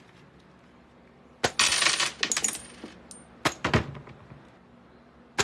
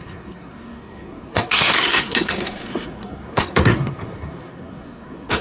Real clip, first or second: first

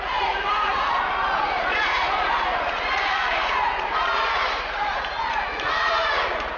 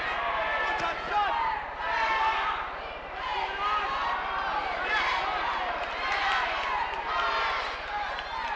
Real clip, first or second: second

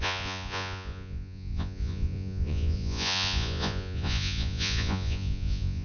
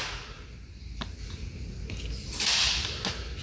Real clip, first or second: second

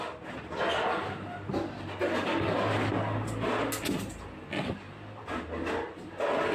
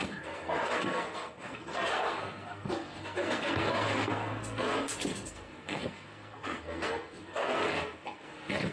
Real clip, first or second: first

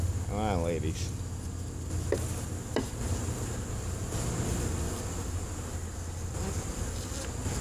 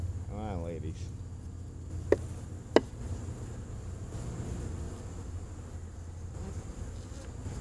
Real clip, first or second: second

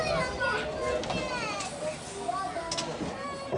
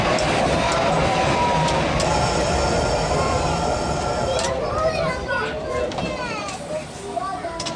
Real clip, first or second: first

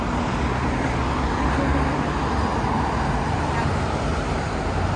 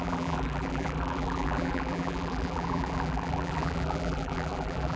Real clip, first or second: first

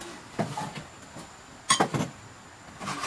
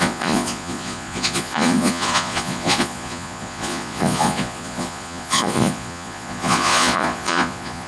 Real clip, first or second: first